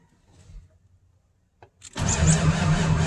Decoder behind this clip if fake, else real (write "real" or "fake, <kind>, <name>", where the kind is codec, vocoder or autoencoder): real